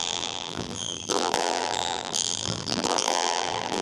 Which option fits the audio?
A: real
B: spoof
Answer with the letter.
B